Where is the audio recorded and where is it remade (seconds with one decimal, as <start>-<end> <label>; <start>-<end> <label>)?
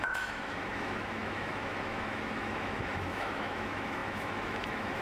0.0-5.0 remade